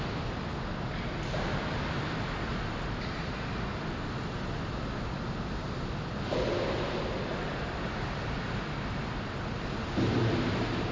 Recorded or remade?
recorded